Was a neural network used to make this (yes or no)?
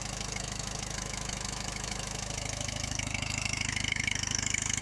yes